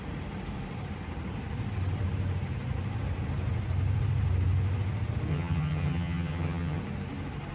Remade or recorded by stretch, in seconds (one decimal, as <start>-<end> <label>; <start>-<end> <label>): 0.0-5.3 recorded; 5.3-6.8 remade; 6.8-7.5 recorded